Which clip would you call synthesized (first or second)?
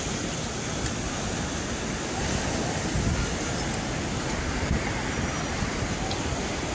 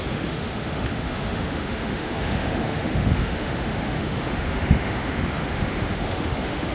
second